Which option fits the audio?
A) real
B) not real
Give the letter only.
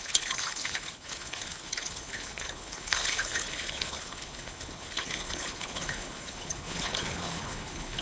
B